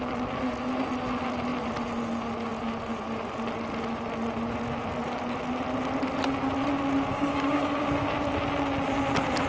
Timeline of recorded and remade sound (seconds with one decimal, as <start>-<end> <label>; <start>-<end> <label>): 0.0-7.1 recorded; 7.1-8.1 remade; 8.1-9.5 recorded